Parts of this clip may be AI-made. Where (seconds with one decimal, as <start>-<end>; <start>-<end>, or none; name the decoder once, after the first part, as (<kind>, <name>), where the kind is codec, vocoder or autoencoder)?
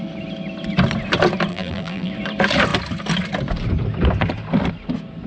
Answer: 1.5-2.1 (vocoder, BigVGAN v2)